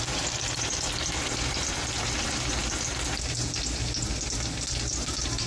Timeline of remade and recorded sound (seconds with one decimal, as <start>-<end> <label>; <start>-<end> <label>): 0.0-0.7 remade; 0.7-1.5 recorded; 1.5-2.6 remade; 2.6-4.9 recorded; 4.9-5.5 remade